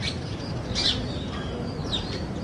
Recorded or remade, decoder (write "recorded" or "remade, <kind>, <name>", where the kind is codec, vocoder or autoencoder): remade, vocoder, BigVGAN v2